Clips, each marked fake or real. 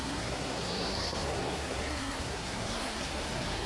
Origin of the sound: fake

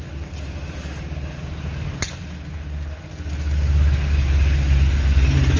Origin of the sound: real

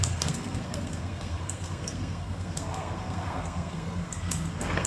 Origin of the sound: fake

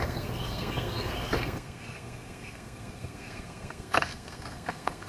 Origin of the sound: fake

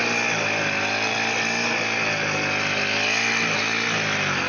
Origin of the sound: real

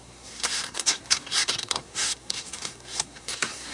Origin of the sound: fake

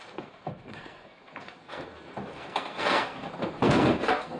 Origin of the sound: fake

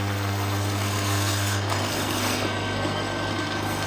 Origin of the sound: fake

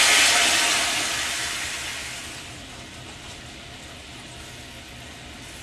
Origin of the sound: real